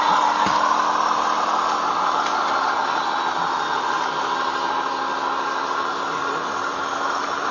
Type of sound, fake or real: real